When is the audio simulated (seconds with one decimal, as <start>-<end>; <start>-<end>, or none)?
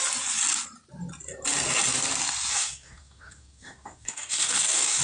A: 2.5-5.0